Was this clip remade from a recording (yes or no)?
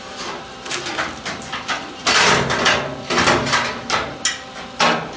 no